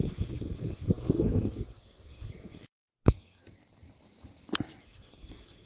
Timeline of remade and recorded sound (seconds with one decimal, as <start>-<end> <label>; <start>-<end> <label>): 0.0-3.4 remade; 3.4-4.8 recorded; 4.8-5.7 remade